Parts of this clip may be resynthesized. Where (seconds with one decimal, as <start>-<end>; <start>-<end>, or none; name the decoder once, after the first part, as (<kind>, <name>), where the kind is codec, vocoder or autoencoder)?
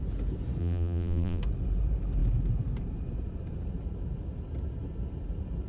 0.6-1.4 (vocoder, BigVGAN v2)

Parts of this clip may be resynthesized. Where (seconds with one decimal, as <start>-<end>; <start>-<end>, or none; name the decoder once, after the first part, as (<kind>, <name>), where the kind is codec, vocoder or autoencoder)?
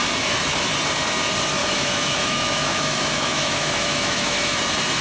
1.6-4.6 (autoencoder, DAC-VAE)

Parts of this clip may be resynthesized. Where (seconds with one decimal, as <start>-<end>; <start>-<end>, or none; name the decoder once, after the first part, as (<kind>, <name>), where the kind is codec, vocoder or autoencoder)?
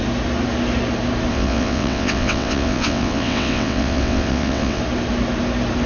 1.3-4.8 (vocoder, WaveNeXt)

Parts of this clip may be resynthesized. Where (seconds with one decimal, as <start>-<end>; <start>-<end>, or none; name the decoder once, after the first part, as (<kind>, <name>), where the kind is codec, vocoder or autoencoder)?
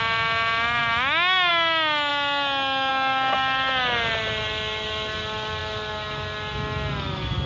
none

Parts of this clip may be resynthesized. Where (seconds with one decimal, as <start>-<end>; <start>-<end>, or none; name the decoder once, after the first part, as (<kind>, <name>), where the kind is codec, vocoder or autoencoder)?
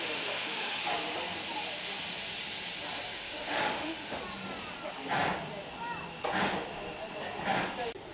0.0-0.8 (autoencoder, DAC-VAE); 3.0-4.2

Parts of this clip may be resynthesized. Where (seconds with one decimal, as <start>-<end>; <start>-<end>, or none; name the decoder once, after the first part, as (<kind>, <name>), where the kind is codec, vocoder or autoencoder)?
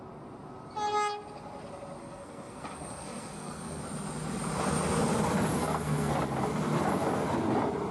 2.0-3.8 (codec, SNAC); 5.6-6.1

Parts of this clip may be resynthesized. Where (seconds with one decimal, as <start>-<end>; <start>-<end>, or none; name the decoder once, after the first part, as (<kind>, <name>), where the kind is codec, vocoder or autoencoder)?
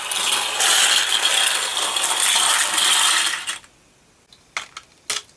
none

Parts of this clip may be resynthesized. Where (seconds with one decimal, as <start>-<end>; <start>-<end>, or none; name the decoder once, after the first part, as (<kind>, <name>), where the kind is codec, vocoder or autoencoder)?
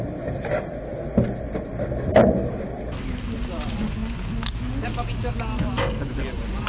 none